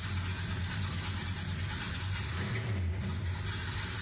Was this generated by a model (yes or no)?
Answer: no